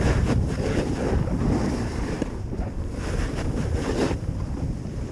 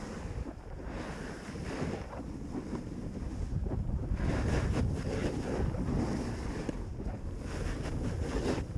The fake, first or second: first